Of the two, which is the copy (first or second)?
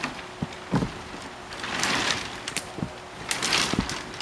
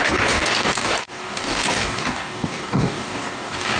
second